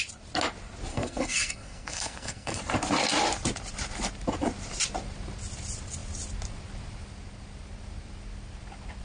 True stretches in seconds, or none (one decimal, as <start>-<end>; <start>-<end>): 0.0-0.9; 2.6-9.0